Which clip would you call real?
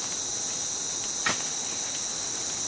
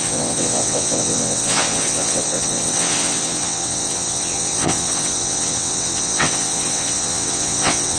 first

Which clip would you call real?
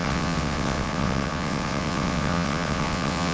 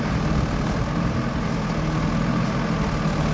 second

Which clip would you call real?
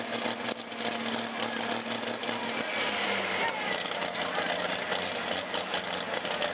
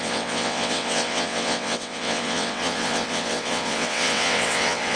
first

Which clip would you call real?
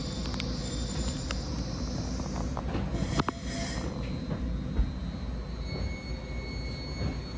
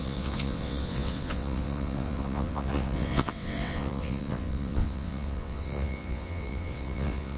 first